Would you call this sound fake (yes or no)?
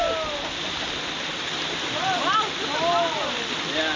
no